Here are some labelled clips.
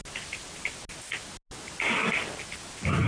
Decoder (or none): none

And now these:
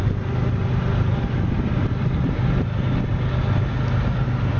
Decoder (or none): none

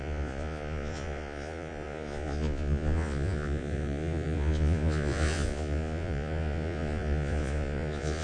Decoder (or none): vocoder, Vocos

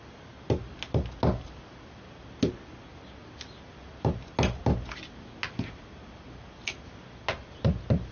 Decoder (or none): none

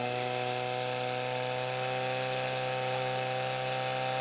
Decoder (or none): none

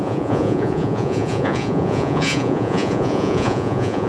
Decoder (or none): vocoder, Vocos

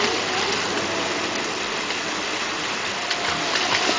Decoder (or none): none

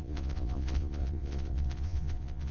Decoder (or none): vocoder, Vocos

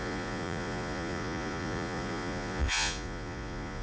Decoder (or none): vocoder, Vocos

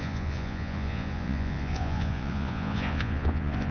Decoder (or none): vocoder, Vocos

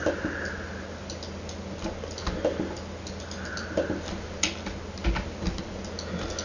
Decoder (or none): none